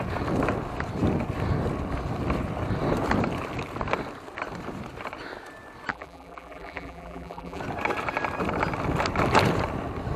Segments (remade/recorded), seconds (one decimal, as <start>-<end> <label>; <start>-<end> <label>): 0.0-5.9 recorded; 5.9-7.6 remade; 7.6-10.2 recorded